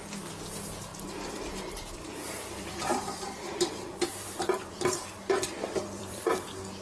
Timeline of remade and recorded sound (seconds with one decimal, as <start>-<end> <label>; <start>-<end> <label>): 0.0-0.9 recorded; 0.9-2.1 remade; 2.1-2.9 recorded; 2.9-6.2 remade; 6.2-6.8 recorded